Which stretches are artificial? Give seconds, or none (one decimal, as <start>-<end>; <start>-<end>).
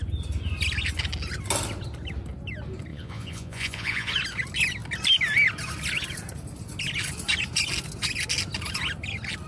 2.9-4.1